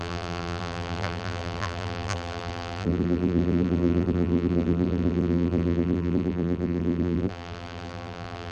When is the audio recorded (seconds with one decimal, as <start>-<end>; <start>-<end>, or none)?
none